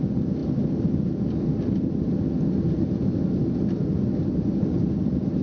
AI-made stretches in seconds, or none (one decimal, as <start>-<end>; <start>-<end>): none